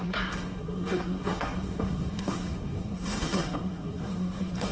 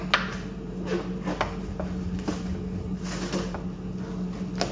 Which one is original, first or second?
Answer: second